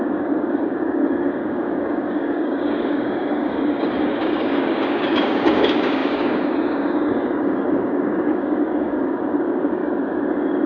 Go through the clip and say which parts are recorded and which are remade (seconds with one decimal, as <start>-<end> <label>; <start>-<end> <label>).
0.0-9.8 remade; 9.8-10.7 recorded